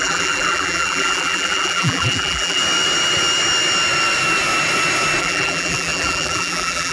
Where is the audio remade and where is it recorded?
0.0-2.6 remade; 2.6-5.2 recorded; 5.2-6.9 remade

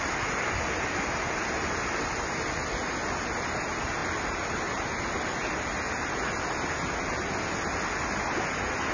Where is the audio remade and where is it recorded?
0.0-8.9 recorded